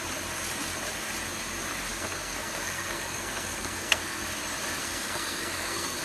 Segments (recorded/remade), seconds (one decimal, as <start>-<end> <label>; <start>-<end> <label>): 0.0-1.9 recorded; 1.9-4.2 remade; 4.2-4.8 recorded; 4.8-6.0 remade